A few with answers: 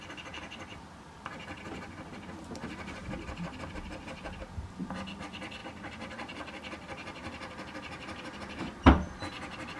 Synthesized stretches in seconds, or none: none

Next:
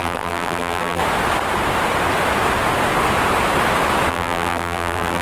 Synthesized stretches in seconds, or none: 0.0-1.0 (vocoder, BigVGAN v2); 4.1-5.2

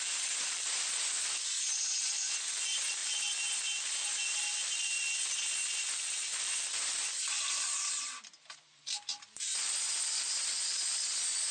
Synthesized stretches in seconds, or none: none

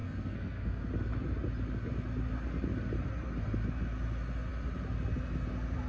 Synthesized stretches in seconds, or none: 0.0-0.9 (codec, SNAC)

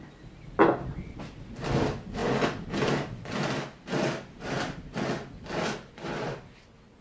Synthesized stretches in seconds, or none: none

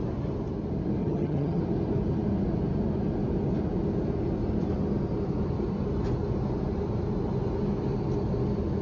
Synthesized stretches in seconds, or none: 1.0-1.6 (vocoder, HiFi-GAN)

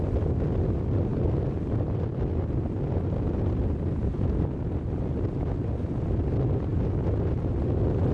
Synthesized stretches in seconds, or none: none